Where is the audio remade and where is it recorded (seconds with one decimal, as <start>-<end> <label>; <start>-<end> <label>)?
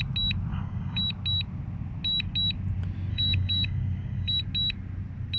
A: 0.0-0.5 recorded; 0.5-1.0 remade; 1.0-3.1 recorded; 3.1-4.4 remade; 4.4-5.4 recorded